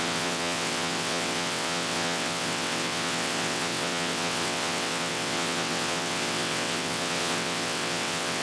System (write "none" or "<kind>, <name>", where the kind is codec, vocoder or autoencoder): vocoder, WaveNeXt